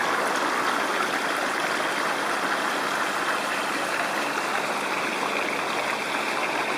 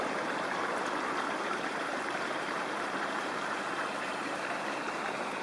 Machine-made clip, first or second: second